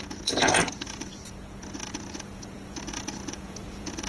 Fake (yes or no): yes